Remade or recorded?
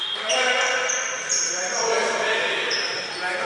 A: recorded